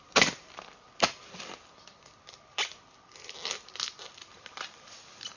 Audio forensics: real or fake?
real